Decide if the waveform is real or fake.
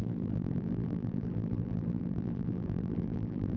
fake